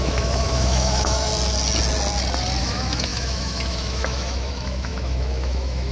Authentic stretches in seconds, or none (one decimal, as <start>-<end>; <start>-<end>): 1.3-2.6